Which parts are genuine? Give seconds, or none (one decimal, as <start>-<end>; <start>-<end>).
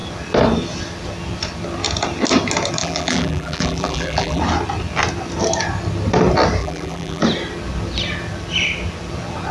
0.0-2.8; 4.4-6.6; 7.2-9.5